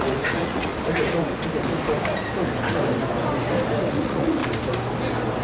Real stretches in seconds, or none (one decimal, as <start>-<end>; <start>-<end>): 0.7-3.9; 4.4-5.4